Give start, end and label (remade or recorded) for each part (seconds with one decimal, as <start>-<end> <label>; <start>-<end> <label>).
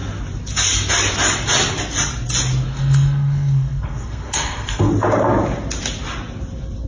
0.0-2.7 recorded; 2.7-4.9 remade; 4.9-6.9 recorded